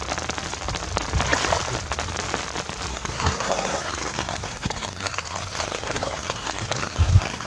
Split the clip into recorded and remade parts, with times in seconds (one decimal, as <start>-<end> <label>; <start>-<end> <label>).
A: 0.0-2.9 recorded; 2.9-7.5 remade